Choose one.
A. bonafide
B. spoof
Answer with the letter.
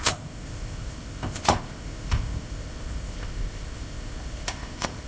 B